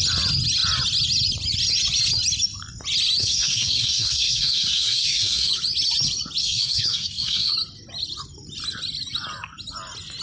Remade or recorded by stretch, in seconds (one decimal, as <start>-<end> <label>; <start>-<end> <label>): 0.0-3.2 recorded; 3.2-5.5 remade; 5.5-6.4 recorded; 6.4-7.5 remade; 7.5-10.2 recorded